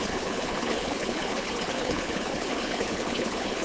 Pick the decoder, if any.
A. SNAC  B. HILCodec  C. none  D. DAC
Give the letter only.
B